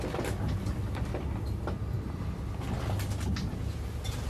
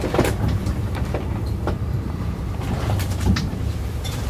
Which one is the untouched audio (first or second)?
first